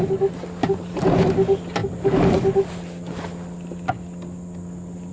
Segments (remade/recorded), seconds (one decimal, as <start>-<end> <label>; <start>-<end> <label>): 0.0-5.1 recorded

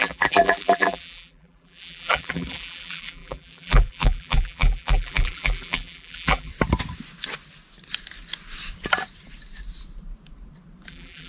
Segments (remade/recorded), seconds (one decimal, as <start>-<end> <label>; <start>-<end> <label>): 0.0-6.5 remade; 6.5-10.9 recorded; 10.9-11.3 remade